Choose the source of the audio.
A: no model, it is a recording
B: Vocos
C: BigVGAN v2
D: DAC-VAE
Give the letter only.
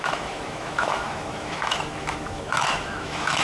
D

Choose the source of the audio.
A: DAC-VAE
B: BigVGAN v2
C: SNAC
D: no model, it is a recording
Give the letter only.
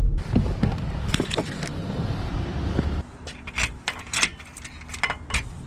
D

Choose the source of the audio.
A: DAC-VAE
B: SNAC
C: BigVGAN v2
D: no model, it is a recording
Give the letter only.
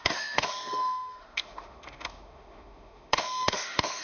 A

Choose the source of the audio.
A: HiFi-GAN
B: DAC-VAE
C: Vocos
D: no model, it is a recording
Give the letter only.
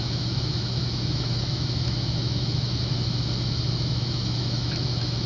B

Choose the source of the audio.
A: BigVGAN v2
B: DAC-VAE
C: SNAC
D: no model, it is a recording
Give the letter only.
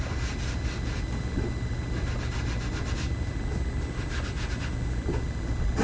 D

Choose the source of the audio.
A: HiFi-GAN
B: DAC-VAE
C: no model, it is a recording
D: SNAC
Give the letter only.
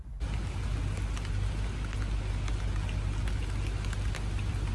C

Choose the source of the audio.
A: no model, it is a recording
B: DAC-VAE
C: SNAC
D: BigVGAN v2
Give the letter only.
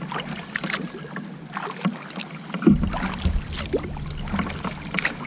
A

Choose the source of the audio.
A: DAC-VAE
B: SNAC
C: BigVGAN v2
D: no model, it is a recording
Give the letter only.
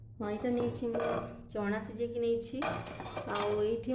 D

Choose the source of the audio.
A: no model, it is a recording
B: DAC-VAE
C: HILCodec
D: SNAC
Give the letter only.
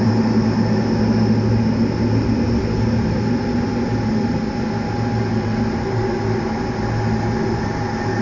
A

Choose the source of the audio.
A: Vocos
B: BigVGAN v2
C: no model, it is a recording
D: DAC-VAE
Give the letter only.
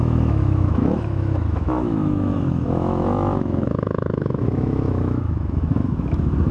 D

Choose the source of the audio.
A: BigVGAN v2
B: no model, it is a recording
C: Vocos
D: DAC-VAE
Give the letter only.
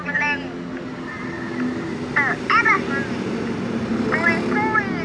B